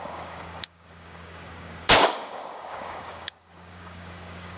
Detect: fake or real fake